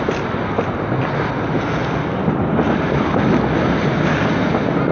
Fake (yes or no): no